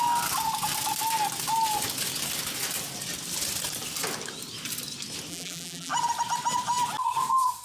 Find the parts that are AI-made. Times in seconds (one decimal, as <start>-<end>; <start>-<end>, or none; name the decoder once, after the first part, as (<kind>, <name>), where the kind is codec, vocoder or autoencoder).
5.3-5.9 (vocoder, BigVGAN v2)